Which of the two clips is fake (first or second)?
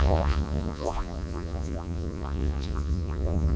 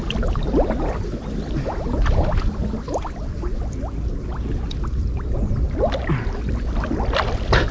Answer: first